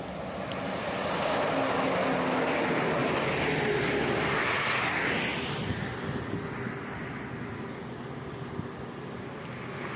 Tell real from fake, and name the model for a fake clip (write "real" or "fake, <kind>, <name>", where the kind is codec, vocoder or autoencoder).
real